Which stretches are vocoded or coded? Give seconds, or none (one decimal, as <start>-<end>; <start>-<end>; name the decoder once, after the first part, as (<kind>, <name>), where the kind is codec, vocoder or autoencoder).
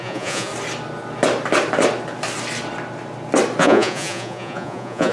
0.0-0.5 (vocoder, Vocos); 3.6-5.1